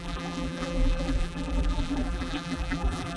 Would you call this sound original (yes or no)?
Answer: no